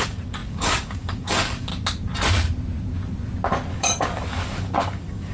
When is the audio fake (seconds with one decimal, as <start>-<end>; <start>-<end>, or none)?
0.0-1.7; 3.7-5.3